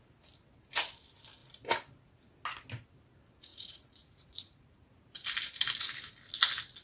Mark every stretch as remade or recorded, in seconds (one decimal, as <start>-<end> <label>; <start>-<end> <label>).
0.0-3.5 recorded; 3.5-4.9 remade; 4.9-6.8 recorded